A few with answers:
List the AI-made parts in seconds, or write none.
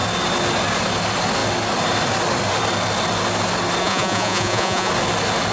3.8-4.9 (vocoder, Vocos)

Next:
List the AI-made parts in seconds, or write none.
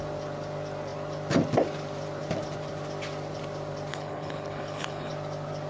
3.9-5.1 (codec, HILCodec)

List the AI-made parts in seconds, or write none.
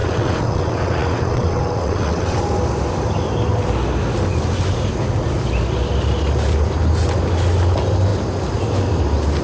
0.0-2.4 (vocoder, WaveNeXt)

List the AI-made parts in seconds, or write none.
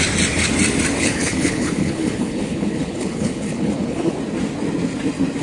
1.0-4.2 (codec, HILCodec)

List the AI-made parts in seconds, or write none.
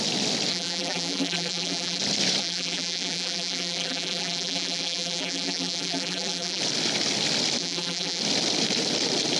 0.5-2.0 (vocoder, BigVGAN v2); 2.4-6.6; 7.6-8.2